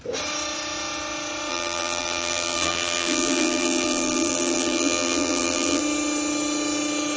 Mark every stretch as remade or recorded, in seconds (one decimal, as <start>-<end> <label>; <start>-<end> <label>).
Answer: 0.0-1.5 recorded; 1.5-5.8 remade; 5.8-7.2 recorded